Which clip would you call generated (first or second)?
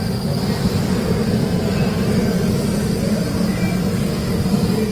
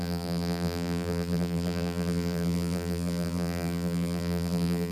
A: second